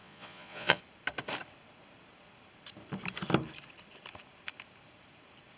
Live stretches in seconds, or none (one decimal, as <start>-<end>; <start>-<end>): 0.8-5.6